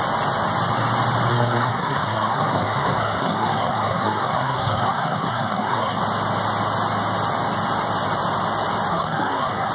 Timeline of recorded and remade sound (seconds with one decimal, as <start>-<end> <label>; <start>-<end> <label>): 0.0-1.3 recorded; 1.3-6.0 remade; 6.0-8.9 recorded; 8.9-9.7 remade